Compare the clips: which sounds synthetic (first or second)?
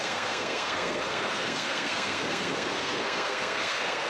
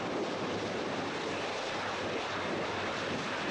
first